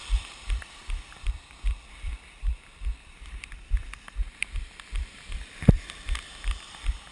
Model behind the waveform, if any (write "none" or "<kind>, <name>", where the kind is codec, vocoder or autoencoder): vocoder, BigVGAN v2